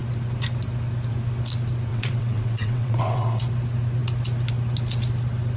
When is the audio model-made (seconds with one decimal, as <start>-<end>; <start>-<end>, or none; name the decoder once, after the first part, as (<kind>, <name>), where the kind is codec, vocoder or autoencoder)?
1.9-3.4 (vocoder, WaveNeXt)